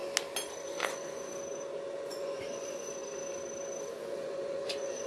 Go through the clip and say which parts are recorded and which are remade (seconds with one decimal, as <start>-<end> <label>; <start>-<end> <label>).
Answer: 0.0-0.6 recorded; 0.6-1.3 remade; 1.3-1.9 recorded; 1.9-3.0 remade; 3.0-4.0 recorded; 4.0-5.1 remade